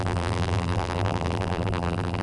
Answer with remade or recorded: remade